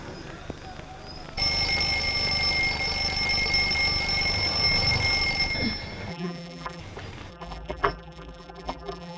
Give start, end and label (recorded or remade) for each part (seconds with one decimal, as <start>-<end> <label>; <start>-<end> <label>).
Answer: 0.0-6.1 recorded; 6.1-6.8 remade; 6.8-7.3 recorded; 7.3-9.2 remade